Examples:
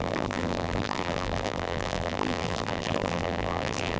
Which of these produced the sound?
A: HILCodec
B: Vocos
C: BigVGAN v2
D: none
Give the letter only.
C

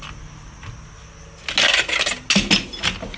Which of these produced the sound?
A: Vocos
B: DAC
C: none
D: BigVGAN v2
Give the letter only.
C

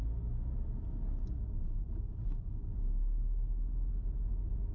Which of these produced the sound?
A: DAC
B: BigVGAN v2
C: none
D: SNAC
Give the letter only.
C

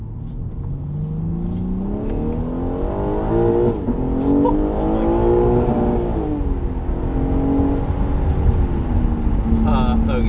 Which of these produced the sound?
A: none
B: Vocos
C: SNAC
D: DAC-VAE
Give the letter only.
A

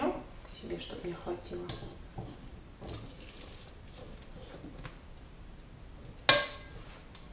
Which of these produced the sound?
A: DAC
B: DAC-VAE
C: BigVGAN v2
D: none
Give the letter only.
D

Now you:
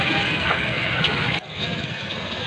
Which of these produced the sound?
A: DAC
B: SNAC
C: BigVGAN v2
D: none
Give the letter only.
B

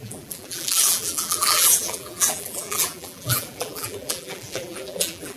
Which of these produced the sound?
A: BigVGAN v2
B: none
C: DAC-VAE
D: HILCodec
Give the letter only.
A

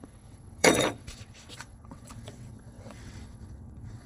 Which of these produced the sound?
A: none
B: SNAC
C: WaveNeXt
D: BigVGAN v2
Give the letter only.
C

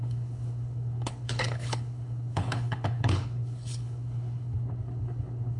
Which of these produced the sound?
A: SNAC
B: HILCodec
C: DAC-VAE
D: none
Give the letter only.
B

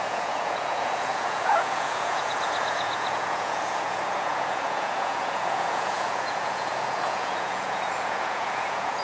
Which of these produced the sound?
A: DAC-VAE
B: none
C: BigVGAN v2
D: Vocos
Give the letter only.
D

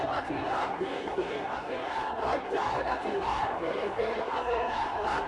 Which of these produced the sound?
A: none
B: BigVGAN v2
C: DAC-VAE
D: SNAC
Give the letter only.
D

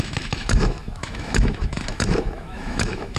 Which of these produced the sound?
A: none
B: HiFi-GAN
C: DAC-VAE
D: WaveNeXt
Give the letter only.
C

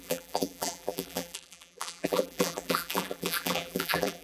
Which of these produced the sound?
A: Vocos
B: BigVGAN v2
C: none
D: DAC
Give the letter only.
B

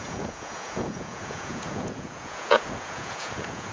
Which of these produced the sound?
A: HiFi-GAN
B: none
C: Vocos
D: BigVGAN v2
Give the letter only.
C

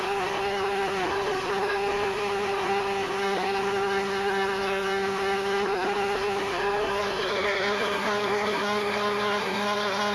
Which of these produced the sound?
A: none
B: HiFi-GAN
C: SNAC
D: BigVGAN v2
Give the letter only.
C